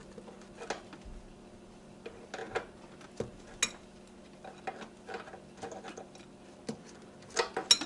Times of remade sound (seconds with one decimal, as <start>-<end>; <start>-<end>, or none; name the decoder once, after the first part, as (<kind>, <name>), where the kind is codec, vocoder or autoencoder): none